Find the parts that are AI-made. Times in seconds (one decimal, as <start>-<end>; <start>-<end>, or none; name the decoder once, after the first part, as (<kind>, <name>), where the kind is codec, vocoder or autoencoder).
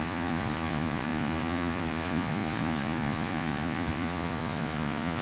0.0-5.2 (vocoder, Vocos)